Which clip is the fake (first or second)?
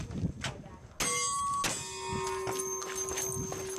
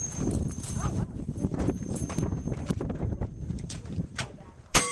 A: second